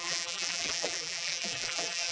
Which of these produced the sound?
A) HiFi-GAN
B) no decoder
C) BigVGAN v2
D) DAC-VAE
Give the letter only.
C